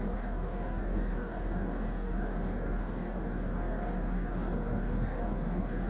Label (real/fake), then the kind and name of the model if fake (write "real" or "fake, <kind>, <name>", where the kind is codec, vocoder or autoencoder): fake, codec, DAC